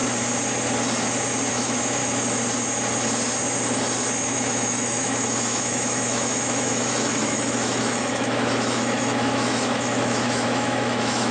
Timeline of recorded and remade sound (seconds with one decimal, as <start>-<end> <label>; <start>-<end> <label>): 0.0-1.5 recorded; 1.5-2.0 remade; 2.0-4.3 recorded; 4.3-11.3 remade